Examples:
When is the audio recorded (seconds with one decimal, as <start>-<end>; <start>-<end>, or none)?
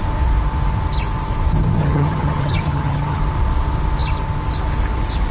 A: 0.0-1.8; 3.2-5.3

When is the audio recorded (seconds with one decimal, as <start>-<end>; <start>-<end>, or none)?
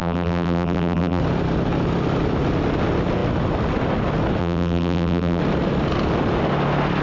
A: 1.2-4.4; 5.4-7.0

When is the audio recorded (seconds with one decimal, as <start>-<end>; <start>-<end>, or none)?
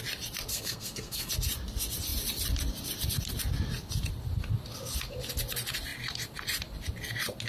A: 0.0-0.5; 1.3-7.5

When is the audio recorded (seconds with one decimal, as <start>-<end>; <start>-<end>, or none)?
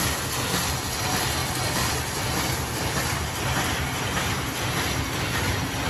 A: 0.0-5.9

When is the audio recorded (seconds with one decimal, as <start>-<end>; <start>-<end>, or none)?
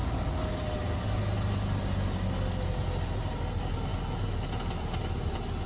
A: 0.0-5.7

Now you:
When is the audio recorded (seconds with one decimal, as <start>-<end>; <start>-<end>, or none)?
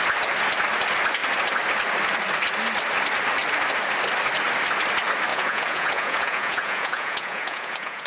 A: 0.0-5.3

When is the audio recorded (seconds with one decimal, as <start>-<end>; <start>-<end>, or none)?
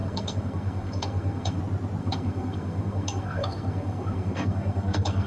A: 1.6-2.0